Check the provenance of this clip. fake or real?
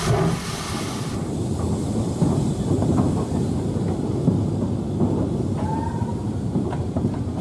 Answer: real